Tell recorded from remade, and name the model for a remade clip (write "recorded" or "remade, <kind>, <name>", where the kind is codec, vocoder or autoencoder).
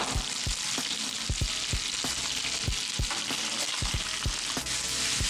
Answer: recorded